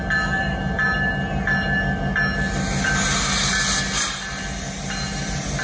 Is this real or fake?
real